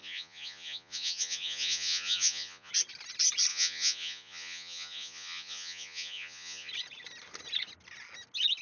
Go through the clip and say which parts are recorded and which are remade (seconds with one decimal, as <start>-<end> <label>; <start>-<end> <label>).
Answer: 0.0-2.7 remade; 2.7-3.5 recorded; 3.5-6.7 remade; 6.7-8.6 recorded